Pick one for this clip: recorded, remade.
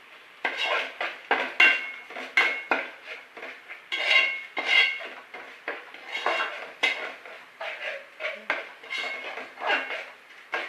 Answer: recorded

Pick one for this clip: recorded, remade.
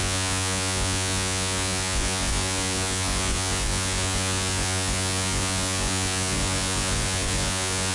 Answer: remade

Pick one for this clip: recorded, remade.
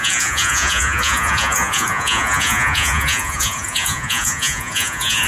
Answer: remade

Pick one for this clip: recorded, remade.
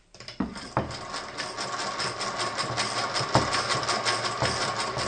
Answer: recorded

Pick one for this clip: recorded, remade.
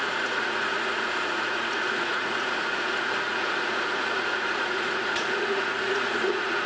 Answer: remade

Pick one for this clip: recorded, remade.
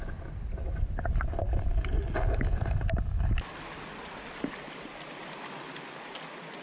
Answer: recorded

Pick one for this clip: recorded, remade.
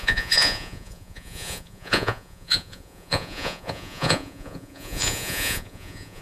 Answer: remade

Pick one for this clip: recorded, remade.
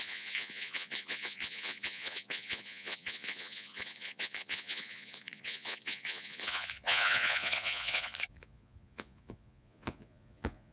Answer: remade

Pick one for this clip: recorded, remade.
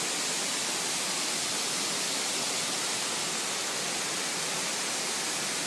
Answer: recorded